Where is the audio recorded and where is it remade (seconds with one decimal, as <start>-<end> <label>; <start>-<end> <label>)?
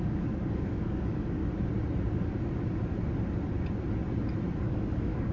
0.0-1.4 remade; 1.4-4.6 recorded; 4.6-5.3 remade